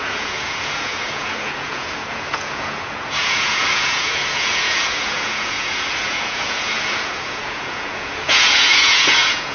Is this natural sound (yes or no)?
no